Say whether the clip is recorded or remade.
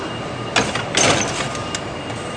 recorded